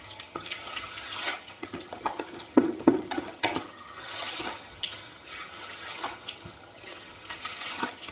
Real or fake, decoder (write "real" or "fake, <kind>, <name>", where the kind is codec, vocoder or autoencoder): fake, vocoder, HiFi-GAN